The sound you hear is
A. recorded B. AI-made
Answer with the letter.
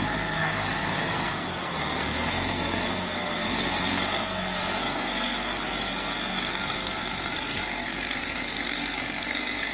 B